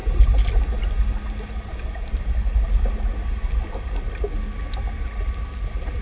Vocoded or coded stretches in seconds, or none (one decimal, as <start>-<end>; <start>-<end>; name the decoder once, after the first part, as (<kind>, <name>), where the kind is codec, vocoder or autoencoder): none